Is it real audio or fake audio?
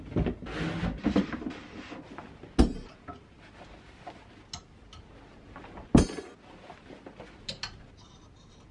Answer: real